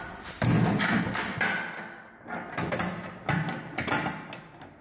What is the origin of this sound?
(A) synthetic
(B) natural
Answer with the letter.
B